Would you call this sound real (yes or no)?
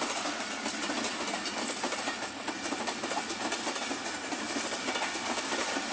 yes